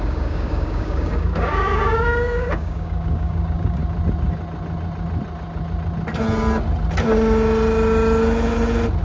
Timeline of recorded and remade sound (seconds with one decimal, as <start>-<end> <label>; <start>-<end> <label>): 0.0-3.8 remade; 3.8-9.0 recorded